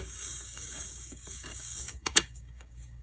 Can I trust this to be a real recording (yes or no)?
no